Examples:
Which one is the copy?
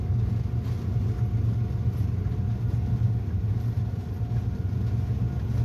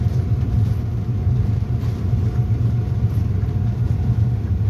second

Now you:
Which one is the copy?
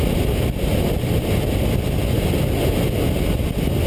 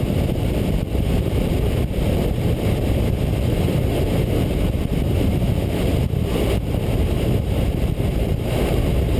second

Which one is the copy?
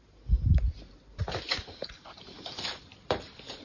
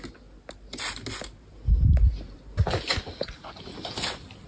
first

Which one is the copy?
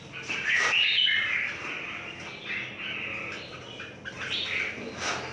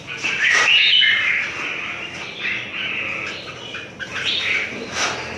second